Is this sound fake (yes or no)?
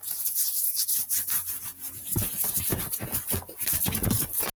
no